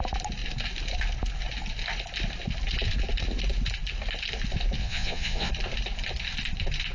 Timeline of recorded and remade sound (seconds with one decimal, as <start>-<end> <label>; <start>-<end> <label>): 0.0-4.8 recorded; 4.8-5.5 remade; 5.5-6.9 recorded